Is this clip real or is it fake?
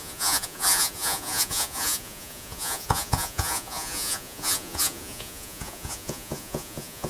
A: fake